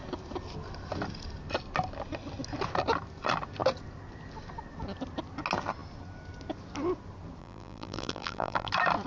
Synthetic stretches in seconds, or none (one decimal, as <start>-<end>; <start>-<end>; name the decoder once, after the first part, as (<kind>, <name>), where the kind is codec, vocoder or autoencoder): 7.4-8.7 (vocoder, BigVGAN v2)